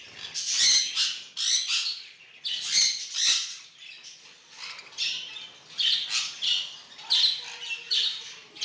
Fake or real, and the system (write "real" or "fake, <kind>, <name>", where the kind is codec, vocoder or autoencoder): real